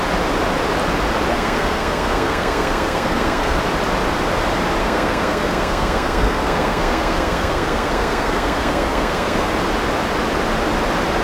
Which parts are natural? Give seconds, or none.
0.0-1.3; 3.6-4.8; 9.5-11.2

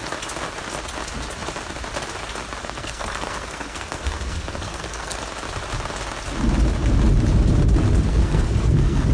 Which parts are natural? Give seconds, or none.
0.0-2.6; 5.2-8.1

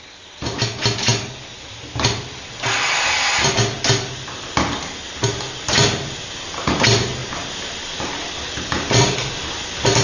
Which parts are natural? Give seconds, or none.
0.0-10.0